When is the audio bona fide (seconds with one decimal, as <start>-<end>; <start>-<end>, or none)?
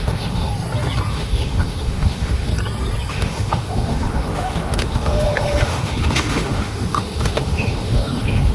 0.5-1.1; 2.5-3.1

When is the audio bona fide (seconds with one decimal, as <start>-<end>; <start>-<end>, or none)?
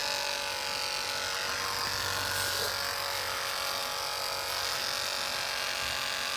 0.0-6.4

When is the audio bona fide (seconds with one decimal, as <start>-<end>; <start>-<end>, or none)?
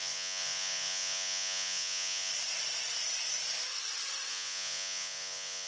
2.3-4.3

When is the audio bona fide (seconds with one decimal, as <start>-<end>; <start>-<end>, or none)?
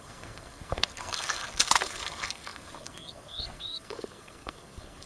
none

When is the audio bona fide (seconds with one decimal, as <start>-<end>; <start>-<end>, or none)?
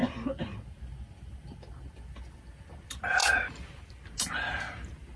0.0-5.2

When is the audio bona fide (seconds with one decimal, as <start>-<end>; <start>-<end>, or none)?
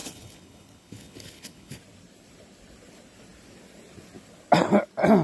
1.8-5.2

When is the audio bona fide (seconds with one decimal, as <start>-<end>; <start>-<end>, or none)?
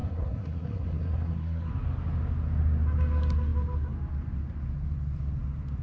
1.7-5.8